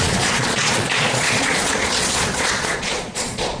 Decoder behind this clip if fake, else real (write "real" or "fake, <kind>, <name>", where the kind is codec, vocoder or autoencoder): fake, vocoder, Vocos